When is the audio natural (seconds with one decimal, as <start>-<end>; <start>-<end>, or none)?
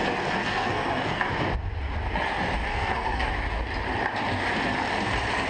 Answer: 0.0-0.4; 1.3-2.7; 3.3-5.5